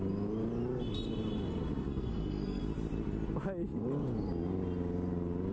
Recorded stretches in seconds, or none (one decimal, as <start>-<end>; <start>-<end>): 0.0-1.8; 2.6-5.5